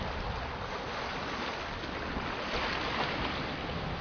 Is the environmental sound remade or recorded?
recorded